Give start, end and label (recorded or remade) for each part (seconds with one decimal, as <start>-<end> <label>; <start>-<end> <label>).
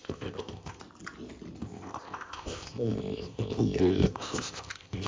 0.0-0.8 remade; 0.8-1.6 recorded; 1.6-5.1 remade